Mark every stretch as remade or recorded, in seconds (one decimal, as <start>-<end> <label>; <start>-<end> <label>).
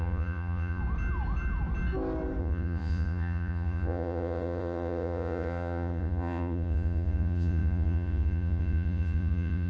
0.0-0.8 remade; 0.8-2.4 recorded; 2.4-9.7 remade